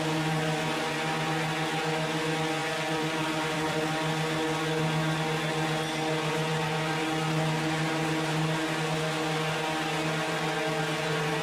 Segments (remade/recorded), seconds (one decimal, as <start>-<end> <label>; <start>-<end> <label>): 0.0-2.6 recorded; 2.6-3.9 remade; 3.9-11.4 recorded

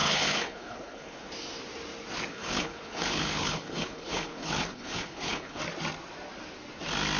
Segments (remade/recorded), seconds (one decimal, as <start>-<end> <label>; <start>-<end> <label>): 0.0-1.3 remade; 1.3-2.3 recorded; 2.3-5.6 remade; 5.6-7.2 recorded

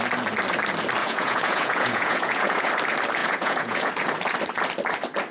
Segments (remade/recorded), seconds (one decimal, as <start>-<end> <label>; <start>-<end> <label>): 0.0-1.0 recorded; 1.0-2.7 remade; 2.7-3.2 recorded; 3.2-3.9 remade; 3.9-5.3 recorded

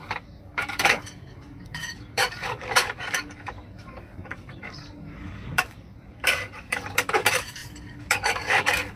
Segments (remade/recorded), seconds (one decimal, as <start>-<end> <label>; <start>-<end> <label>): 0.0-9.0 remade